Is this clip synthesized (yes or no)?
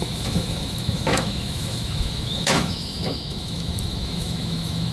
yes